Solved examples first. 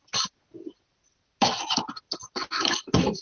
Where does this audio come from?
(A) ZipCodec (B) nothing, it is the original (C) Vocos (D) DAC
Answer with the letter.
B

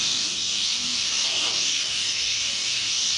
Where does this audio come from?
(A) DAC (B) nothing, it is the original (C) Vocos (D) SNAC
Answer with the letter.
A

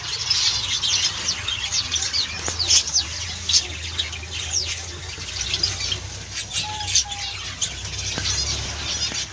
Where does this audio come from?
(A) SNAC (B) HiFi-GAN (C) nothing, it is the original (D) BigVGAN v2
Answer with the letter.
C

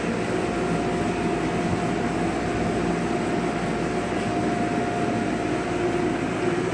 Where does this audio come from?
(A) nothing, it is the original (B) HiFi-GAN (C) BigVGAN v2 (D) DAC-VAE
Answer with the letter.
A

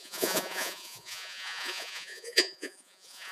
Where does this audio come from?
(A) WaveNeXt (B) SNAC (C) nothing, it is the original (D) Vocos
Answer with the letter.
D